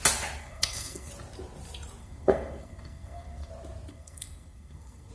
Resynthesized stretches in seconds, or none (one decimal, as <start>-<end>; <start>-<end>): 0.4-1.1; 2.0-3.5; 3.9-5.1